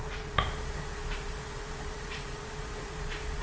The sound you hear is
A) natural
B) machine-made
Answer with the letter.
B